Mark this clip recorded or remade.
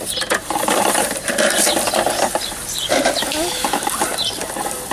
remade